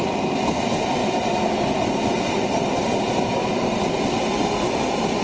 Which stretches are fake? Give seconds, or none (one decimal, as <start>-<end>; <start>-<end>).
none